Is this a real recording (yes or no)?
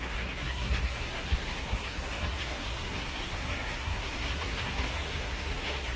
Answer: no